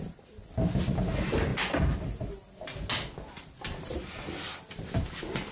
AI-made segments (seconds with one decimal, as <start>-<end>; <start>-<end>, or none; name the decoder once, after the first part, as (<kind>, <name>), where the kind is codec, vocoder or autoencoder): none